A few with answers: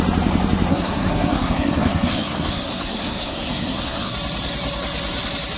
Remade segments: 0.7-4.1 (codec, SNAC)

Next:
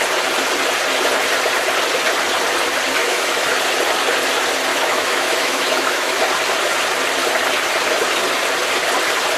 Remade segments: 3.0-3.5 (autoencoder, DAC-VAE); 4.7-6.2